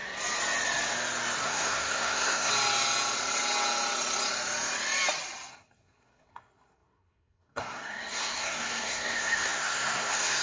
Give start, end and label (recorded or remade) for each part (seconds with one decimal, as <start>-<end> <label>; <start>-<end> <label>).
0.0-1.4 recorded; 1.4-2.5 remade; 2.5-5.5 recorded; 5.5-10.4 remade